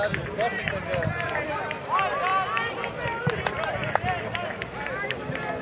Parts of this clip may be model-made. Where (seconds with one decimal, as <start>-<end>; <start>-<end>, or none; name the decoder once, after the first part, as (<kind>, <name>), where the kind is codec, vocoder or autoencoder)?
none